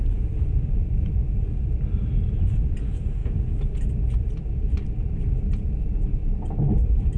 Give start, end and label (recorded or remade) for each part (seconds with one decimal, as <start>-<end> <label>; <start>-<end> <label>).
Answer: 0.0-3.2 remade; 3.2-4.0 recorded; 4.0-6.2 remade; 6.2-6.8 recorded; 6.8-7.2 remade